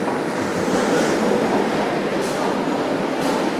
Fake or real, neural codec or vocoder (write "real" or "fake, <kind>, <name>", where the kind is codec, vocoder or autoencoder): real